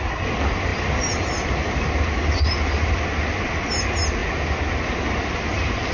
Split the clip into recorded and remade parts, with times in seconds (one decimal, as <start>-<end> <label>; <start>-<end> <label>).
0.0-5.9 recorded

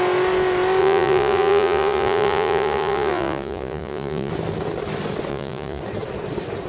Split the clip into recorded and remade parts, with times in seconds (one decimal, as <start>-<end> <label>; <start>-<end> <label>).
0.0-0.8 recorded; 0.8-4.3 remade; 4.3-5.3 recorded; 5.3-5.8 remade; 5.8-6.7 recorded

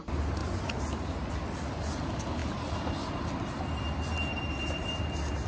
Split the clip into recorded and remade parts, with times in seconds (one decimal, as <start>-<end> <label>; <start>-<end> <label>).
0.0-5.5 recorded

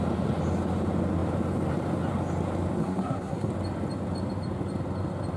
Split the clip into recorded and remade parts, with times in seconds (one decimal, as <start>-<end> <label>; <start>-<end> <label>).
0.0-2.8 recorded; 2.8-3.5 remade; 3.5-5.4 recorded